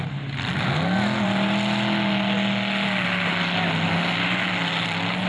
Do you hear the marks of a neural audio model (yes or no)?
no